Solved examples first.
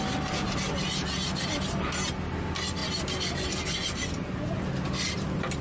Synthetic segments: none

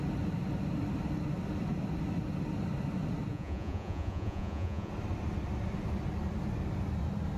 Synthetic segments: 3.3-4.9 (vocoder, Vocos)

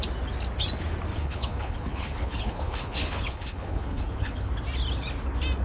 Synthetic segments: 1.1-4.5 (codec, HILCodec)

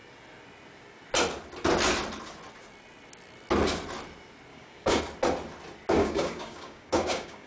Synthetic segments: 4.5-5.0 (codec, DAC); 6.0-7.5

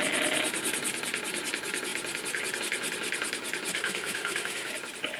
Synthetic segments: 3.7-4.7 (autoencoder, DAC-VAE)

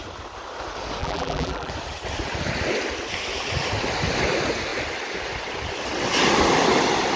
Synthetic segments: 1.0-1.7 (vocoder, BigVGAN v2)

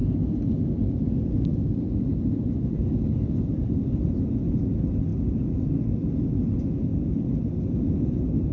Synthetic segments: none